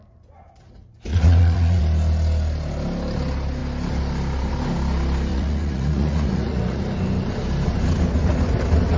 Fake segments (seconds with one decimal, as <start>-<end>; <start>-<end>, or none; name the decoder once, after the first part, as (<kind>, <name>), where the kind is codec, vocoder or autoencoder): 1.1-1.8 (vocoder, Vocos); 5.3-6.8